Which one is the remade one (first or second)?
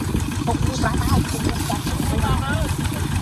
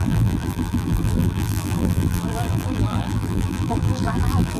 second